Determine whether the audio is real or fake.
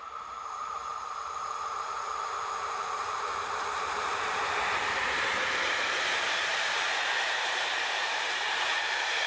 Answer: fake